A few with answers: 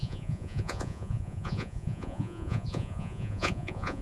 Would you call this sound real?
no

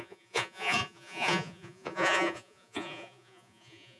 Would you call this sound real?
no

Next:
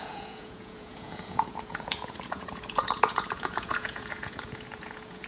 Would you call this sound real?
no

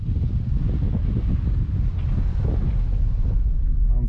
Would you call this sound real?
yes